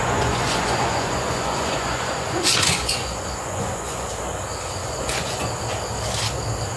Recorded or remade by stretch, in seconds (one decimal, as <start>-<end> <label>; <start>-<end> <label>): 0.0-4.1 remade; 4.1-4.8 recorded; 4.8-5.5 remade; 5.5-6.8 recorded